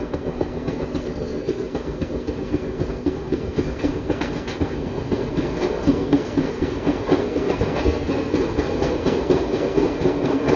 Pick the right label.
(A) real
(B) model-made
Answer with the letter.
B